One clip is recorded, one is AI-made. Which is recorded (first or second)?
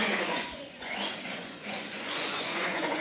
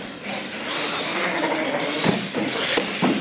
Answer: second